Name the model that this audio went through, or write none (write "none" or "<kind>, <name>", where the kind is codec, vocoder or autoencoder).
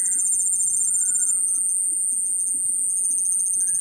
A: none